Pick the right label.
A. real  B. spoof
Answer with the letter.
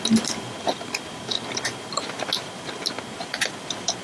A